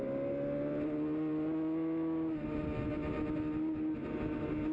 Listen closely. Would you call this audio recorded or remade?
recorded